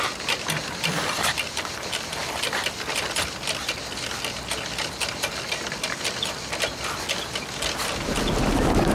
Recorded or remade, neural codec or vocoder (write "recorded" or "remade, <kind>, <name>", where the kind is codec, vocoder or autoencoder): recorded